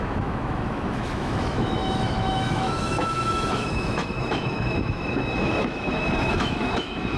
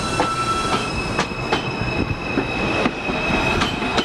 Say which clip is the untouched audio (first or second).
second